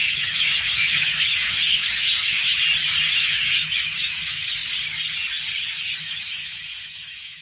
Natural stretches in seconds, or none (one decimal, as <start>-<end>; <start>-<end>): 2.5-3.1; 4.6-6.0